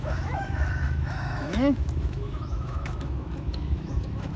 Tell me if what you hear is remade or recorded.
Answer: remade